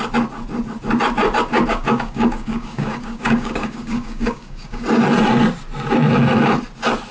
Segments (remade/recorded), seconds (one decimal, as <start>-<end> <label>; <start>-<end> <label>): 0.0-1.5 recorded; 1.5-4.8 remade; 4.8-7.1 recorded